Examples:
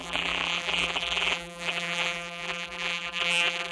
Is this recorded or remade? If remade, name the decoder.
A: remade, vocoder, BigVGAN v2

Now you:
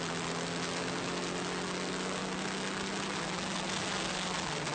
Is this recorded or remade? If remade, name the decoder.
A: recorded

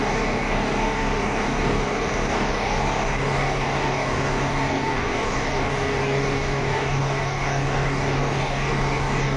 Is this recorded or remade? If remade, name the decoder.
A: remade, codec, DAC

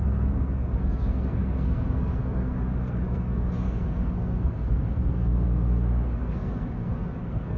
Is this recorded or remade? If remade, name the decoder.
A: remade, codec, SNAC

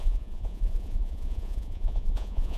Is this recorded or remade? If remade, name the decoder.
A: remade, vocoder, Vocos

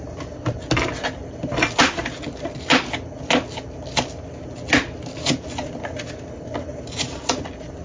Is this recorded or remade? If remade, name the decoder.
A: recorded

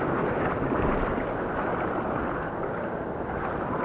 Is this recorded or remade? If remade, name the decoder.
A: recorded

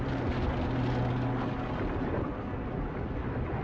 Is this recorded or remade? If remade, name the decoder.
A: recorded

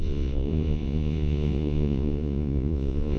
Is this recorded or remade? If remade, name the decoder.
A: remade, vocoder, Vocos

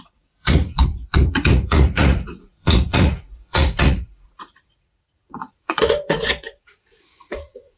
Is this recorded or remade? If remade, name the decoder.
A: remade, vocoder, Vocos